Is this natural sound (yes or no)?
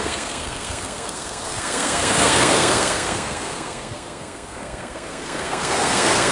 no